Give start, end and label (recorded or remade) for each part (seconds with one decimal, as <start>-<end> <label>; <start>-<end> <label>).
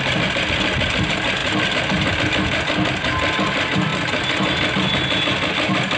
0.0-6.0 recorded